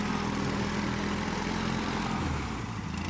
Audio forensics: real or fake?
real